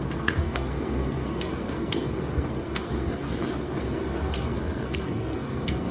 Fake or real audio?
fake